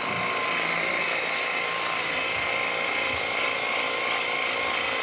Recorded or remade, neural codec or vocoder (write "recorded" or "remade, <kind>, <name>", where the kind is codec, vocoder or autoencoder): recorded